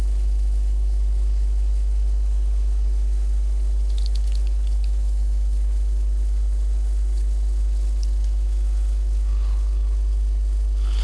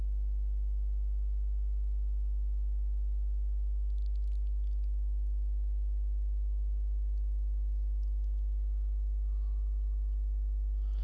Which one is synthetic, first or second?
first